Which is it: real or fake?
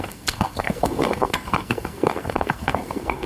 fake